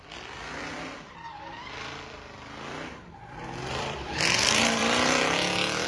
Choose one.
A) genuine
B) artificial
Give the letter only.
B